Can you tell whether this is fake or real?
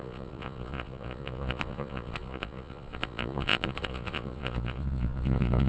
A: fake